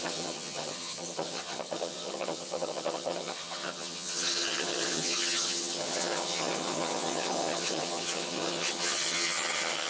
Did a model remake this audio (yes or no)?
yes